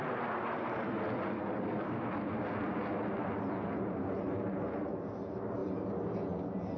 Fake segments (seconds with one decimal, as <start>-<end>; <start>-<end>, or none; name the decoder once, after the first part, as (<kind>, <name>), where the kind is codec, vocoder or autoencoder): none

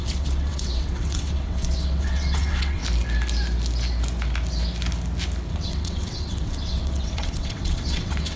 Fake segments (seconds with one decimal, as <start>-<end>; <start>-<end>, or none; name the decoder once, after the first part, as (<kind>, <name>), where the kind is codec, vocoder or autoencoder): 0.0-2.8 (vocoder, WaveNeXt); 5.5-8.4

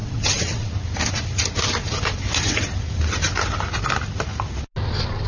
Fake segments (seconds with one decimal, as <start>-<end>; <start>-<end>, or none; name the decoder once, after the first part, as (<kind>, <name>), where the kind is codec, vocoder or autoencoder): 0.0-0.7 (vocoder, WaveNeXt)

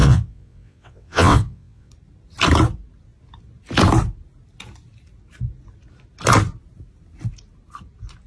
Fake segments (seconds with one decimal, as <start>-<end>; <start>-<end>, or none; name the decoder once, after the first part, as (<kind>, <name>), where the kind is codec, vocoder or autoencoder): 0.0-1.9 (vocoder, WaveNeXt)

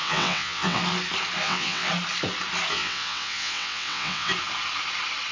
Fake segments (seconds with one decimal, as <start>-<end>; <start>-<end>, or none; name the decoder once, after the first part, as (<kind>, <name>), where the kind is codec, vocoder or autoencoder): 0.0-0.8 (vocoder, WaveNeXt); 1.4-1.9; 2.7-4.3

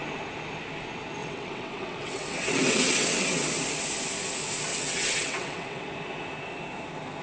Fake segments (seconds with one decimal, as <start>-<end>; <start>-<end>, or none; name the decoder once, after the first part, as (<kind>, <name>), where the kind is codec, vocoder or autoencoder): 1.2-3.5 (vocoder, WaveNeXt); 4.7-5.8

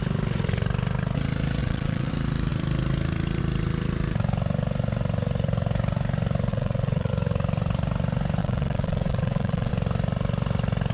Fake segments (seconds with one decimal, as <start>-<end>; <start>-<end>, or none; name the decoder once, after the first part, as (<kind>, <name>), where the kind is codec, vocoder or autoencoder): 1.6-2.1 (vocoder, WaveNeXt); 6.5-7.1; 8.4-9.7

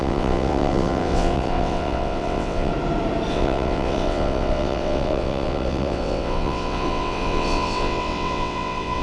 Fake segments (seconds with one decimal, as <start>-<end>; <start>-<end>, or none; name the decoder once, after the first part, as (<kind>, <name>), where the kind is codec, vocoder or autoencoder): 0.0-2.7 (vocoder, WaveNeXt); 3.3-9.0